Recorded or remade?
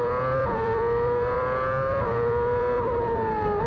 remade